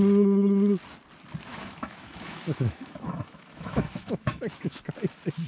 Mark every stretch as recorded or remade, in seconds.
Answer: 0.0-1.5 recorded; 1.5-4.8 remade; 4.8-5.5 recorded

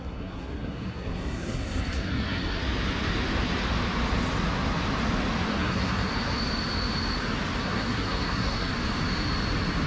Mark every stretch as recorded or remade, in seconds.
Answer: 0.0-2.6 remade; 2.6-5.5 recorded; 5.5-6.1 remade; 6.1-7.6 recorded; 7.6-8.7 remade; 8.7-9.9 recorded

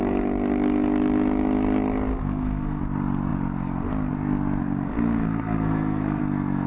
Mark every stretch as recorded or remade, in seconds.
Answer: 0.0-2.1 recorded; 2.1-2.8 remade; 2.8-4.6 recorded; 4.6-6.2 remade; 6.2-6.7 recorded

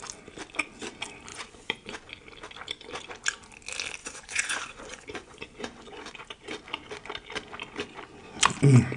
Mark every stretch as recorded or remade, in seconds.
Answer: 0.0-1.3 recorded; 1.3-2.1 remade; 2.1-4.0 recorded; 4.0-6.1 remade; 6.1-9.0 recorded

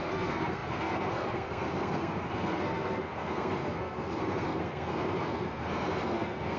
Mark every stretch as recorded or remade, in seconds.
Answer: 0.0-6.6 remade

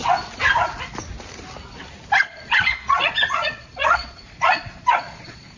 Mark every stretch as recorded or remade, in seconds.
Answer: 0.0-2.2 recorded; 2.2-5.6 remade

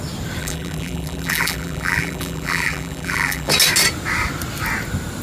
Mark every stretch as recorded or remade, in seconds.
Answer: 0.0-0.4 recorded; 0.4-3.5 remade; 3.5-5.2 recorded